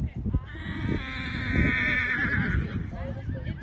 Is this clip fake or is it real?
real